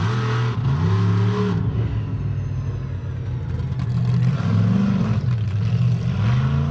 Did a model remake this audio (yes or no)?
no